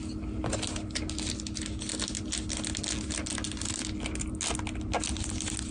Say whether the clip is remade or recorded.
recorded